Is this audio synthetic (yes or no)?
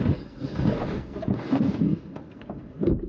yes